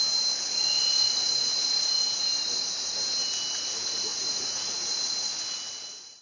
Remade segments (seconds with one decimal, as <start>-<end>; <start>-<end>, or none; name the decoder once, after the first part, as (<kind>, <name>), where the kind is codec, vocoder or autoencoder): 4.1-5.4 (vocoder, Vocos)